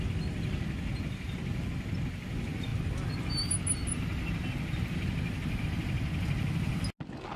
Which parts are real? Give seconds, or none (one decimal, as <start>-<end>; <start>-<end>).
0.0-7.4